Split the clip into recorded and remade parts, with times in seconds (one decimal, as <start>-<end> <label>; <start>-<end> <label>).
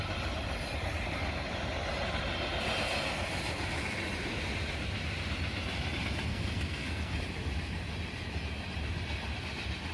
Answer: 0.0-6.3 recorded; 6.3-7.2 remade; 7.2-9.9 recorded